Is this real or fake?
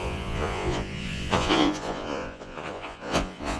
fake